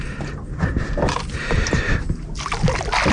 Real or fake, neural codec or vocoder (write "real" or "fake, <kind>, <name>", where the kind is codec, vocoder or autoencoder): real